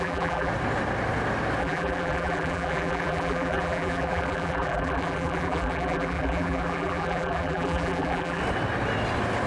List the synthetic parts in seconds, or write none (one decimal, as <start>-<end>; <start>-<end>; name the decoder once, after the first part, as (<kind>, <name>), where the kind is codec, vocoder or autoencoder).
0.0-0.5 (vocoder, BigVGAN v2); 1.6-8.4